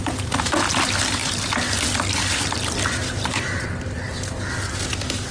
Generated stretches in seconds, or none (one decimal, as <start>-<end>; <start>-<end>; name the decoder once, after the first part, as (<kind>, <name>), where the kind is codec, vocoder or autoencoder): none